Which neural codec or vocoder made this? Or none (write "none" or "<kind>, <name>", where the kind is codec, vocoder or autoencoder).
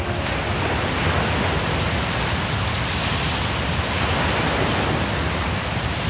none